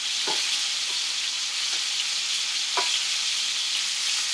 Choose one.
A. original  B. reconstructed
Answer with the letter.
A